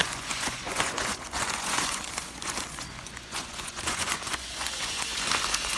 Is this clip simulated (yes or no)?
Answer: yes